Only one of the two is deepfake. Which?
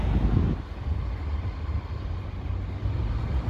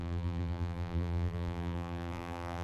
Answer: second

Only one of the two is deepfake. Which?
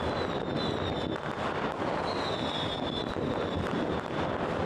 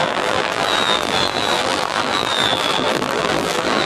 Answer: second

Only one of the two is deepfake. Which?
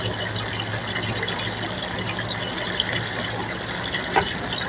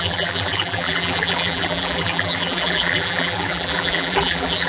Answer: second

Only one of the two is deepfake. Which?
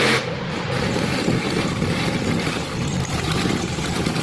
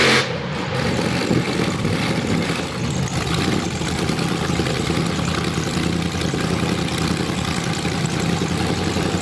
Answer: first